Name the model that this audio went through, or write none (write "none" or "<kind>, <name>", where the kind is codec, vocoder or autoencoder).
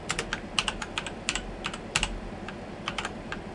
none